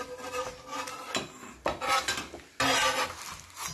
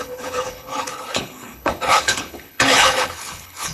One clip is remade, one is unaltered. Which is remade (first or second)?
second